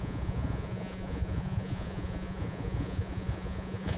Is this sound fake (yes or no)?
yes